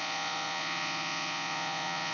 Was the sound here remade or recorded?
remade